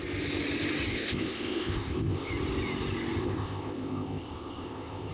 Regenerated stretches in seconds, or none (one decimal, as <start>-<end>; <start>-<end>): 0.9-2.3; 3.2-5.1